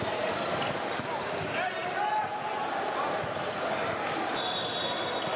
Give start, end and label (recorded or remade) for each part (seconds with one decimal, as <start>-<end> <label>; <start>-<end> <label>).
0.0-0.6 remade; 0.6-5.4 recorded